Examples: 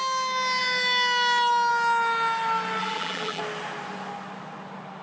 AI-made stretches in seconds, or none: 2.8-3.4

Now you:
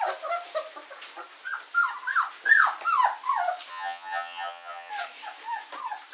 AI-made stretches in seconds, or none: 3.7-4.9

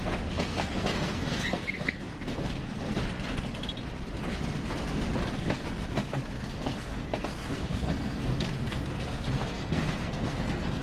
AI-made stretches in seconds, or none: 0.0-3.0; 5.3-10.8

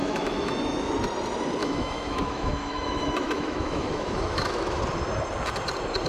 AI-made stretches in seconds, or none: 0.0-0.9; 1.6-4.8

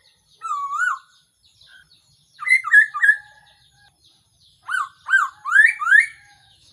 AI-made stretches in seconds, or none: 5.8-6.7

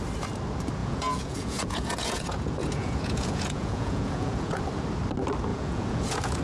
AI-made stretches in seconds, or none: 0.8-4.6; 5.5-6.4

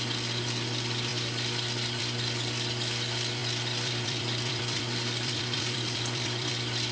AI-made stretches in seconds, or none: 3.4-6.5

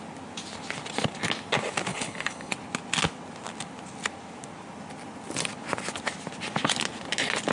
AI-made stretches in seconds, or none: 1.9-2.5